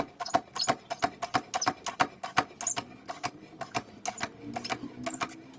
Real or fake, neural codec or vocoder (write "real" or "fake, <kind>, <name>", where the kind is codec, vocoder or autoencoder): real